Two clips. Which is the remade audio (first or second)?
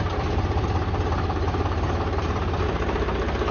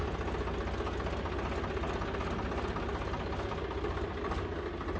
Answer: first